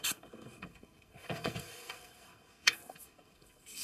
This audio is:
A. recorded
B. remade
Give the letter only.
B